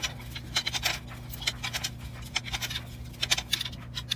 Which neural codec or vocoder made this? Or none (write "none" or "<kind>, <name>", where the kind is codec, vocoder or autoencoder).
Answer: none